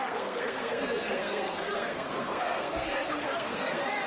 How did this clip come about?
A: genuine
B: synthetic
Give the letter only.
B